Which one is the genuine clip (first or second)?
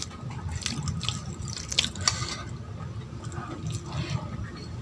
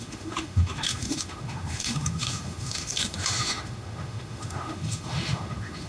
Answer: first